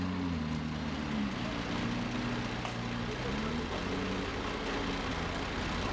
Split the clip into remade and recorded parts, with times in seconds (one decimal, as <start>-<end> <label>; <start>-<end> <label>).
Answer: 0.0-5.9 recorded